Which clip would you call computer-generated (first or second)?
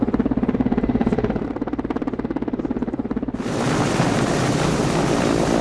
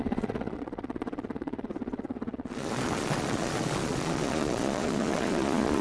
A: second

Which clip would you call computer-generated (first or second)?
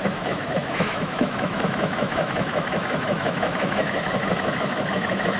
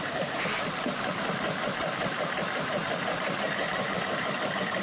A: first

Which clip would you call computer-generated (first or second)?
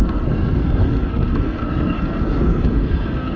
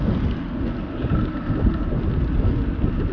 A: first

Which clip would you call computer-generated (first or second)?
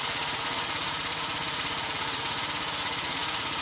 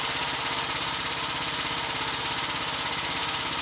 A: first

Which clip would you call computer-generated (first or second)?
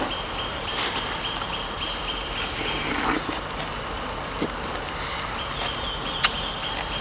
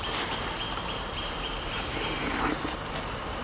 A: second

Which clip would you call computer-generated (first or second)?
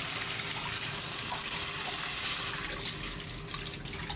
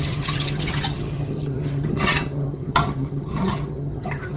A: second